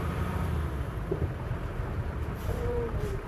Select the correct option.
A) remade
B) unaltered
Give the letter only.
A